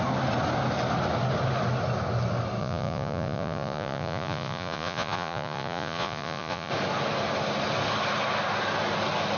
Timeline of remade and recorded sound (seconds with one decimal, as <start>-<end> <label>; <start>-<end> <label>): 0.0-2.6 recorded; 2.6-6.7 remade; 6.7-9.4 recorded